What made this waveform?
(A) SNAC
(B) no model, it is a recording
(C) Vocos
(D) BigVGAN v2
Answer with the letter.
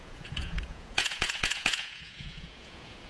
C